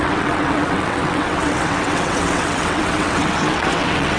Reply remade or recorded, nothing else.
remade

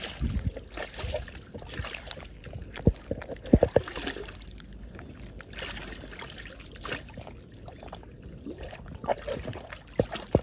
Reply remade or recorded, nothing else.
recorded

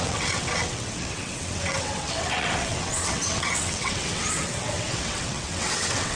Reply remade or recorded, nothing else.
remade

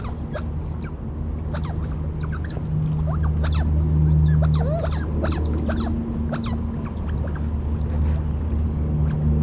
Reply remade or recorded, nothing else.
recorded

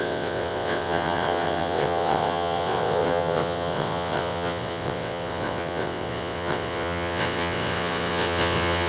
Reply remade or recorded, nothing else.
remade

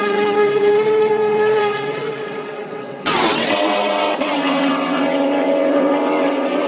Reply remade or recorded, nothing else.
remade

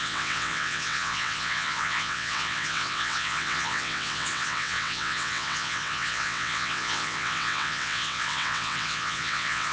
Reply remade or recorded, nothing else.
remade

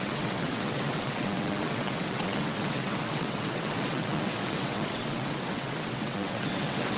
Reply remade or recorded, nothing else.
remade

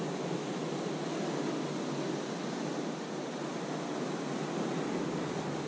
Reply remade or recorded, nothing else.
recorded